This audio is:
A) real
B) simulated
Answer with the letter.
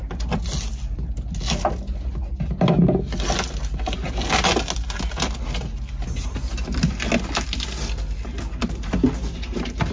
A